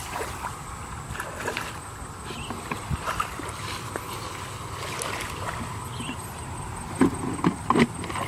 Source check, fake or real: real